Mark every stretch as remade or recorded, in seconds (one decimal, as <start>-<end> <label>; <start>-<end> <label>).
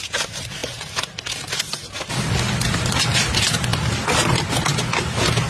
0.0-5.5 recorded